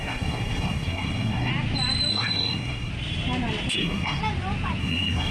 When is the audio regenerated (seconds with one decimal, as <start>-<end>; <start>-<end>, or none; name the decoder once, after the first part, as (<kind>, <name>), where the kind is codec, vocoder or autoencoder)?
0.0-1.5 (codec, SNAC); 2.1-2.9; 3.7-4.2; 4.8-5.3